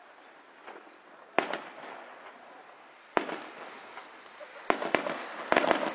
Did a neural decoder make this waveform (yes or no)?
no